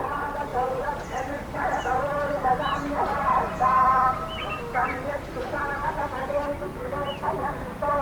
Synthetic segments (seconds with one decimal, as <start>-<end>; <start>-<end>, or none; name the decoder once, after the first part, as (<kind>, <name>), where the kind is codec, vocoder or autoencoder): 0.5-1.8 (vocoder, BigVGAN v2); 6.7-8.0